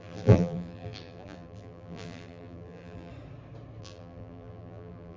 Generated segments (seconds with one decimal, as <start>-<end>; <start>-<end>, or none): 0.0-3.1; 3.8-5.2